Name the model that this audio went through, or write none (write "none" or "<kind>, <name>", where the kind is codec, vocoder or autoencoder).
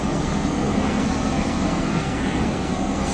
codec, SNAC